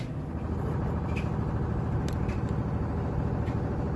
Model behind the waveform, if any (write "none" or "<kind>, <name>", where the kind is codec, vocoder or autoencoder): none